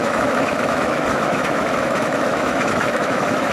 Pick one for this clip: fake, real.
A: fake